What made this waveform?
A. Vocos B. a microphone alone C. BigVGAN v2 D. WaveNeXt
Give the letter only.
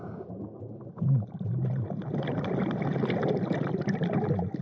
B